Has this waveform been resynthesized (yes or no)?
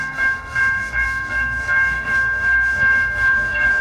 yes